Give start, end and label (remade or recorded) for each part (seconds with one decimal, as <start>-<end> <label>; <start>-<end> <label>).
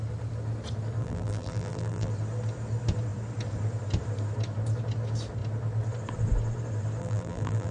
0.0-1.0 recorded; 1.0-2.1 remade; 2.1-7.0 recorded; 7.0-7.7 remade